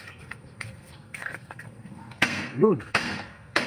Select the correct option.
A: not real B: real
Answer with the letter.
A